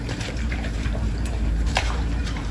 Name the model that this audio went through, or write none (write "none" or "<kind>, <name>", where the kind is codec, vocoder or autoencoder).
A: vocoder, BigVGAN v2